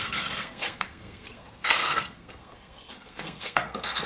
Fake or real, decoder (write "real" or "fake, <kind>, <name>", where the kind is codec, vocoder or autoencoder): fake, codec, SNAC